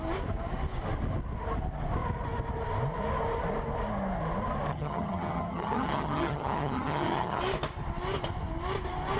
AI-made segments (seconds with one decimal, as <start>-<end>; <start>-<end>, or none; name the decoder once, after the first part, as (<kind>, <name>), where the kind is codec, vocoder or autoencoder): 4.7-7.4 (vocoder, HiFi-GAN)